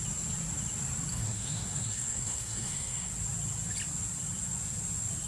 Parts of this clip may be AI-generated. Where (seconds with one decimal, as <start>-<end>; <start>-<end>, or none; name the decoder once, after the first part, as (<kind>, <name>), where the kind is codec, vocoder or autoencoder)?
1.1-3.1 (codec, SNAC)